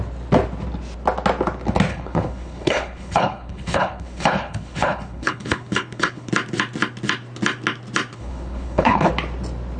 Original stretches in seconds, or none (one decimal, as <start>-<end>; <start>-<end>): 0.0-1.9; 6.3-8.1; 9.1-9.8